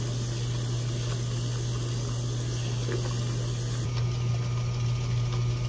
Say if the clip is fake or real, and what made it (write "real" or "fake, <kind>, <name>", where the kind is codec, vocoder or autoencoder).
real